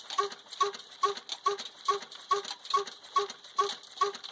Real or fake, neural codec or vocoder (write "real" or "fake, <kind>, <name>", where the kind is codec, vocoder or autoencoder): real